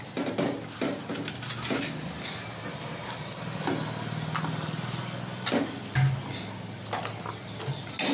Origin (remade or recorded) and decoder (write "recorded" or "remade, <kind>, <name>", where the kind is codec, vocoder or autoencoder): recorded